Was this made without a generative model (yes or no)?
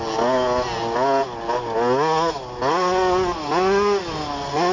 yes